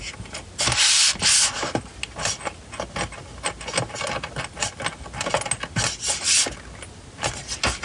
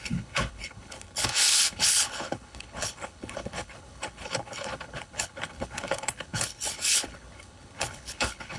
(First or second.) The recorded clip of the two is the first